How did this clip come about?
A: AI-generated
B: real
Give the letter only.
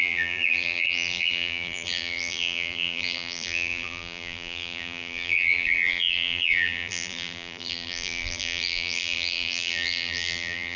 A